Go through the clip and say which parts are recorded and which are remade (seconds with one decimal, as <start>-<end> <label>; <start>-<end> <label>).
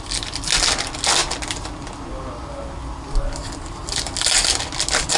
0.0-5.2 recorded